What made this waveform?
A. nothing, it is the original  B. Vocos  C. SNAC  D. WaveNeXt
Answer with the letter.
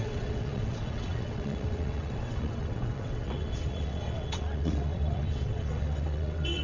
D